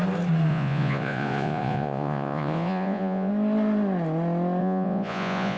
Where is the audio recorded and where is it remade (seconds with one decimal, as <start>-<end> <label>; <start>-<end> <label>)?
0.0-0.5 recorded; 0.5-3.3 remade; 3.3-4.6 recorded; 4.6-5.6 remade